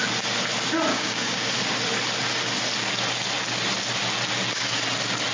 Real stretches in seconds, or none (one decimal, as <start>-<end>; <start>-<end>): 0.0-0.9; 1.5-5.3